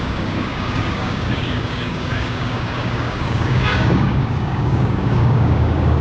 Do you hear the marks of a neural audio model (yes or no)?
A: yes